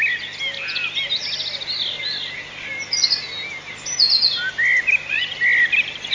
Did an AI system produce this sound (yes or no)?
no